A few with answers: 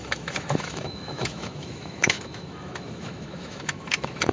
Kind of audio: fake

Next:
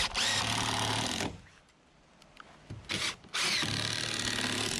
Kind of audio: real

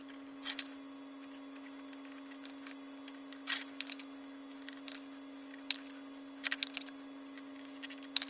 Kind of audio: real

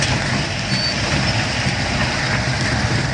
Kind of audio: real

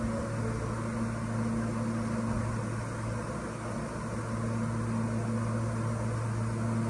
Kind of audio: real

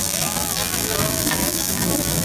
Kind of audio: fake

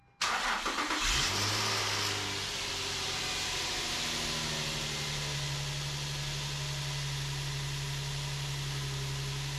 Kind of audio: real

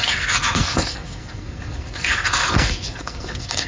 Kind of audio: fake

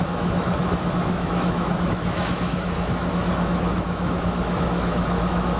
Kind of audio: fake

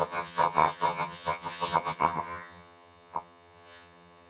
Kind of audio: fake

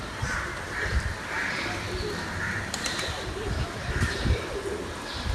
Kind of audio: fake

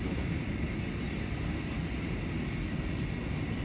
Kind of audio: real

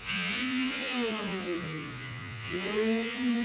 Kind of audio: fake